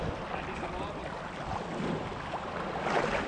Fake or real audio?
real